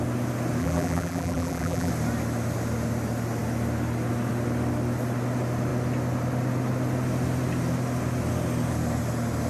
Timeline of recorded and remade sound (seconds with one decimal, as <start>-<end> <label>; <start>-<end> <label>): 0.0-0.6 recorded; 0.6-1.9 remade; 1.9-9.5 recorded